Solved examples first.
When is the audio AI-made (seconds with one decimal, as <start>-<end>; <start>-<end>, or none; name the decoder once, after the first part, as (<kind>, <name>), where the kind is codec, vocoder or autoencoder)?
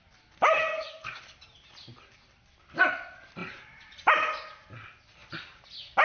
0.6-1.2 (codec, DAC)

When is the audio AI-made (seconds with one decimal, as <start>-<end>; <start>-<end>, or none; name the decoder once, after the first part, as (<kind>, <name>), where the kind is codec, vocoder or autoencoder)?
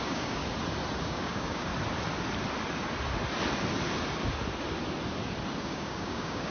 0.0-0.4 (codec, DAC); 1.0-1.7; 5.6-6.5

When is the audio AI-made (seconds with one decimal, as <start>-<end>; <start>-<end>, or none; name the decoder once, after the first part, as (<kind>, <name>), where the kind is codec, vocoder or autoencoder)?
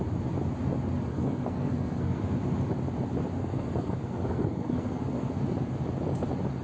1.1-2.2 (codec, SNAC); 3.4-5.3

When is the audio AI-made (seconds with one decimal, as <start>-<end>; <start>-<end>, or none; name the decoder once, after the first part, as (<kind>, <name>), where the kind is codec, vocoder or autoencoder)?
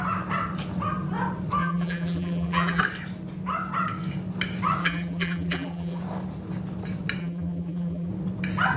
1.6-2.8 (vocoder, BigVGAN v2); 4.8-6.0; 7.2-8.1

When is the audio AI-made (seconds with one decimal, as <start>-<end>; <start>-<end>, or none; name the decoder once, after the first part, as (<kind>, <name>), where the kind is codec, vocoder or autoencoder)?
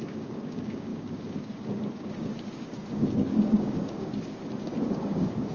0.0-5.5 (codec, DAC)